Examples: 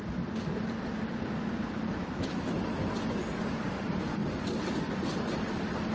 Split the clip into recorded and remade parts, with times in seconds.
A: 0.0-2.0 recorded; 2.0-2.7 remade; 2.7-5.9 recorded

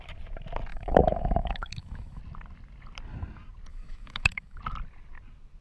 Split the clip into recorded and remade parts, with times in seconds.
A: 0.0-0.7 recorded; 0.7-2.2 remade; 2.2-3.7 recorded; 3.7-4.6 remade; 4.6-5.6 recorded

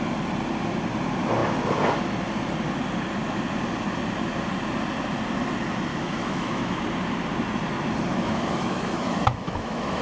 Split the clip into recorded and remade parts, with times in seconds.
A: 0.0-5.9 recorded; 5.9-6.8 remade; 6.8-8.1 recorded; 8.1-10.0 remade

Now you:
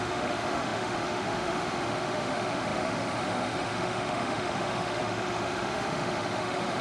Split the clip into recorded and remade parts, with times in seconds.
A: 0.0-6.8 remade

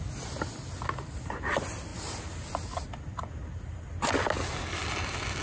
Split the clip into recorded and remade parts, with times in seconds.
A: 0.0-5.4 recorded